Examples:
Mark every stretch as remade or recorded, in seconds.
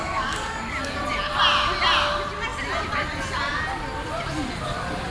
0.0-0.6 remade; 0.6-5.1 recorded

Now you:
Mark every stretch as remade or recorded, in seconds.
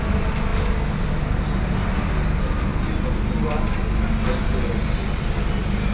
0.0-5.9 recorded